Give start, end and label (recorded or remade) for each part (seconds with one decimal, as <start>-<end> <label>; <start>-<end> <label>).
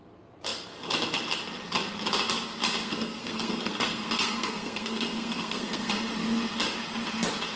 0.0-2.8 recorded; 2.8-5.9 remade; 5.9-7.6 recorded